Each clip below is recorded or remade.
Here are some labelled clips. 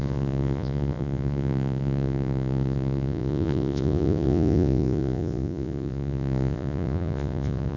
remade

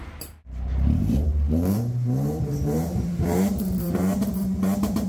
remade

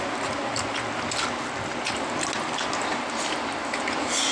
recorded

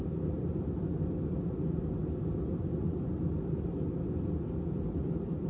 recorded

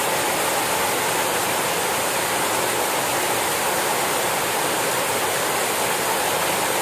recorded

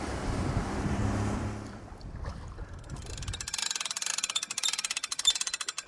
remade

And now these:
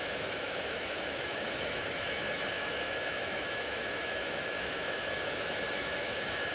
remade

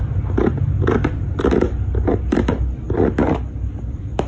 recorded